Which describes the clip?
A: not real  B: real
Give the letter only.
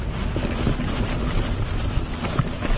B